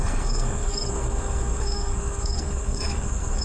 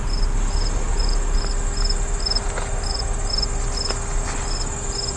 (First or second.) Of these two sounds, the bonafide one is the second